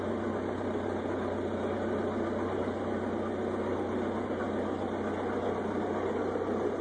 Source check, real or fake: real